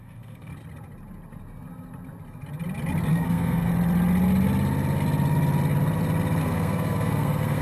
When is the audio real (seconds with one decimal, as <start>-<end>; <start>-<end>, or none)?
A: 0.5-3.1; 3.7-6.4